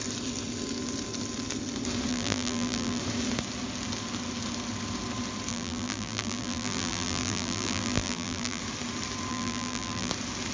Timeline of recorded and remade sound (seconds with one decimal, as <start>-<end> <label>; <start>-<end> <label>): 0.0-2.1 recorded; 2.1-3.0 remade; 3.0-5.5 recorded; 5.5-8.6 remade; 8.6-9.3 recorded; 9.3-10.1 remade; 10.1-10.5 recorded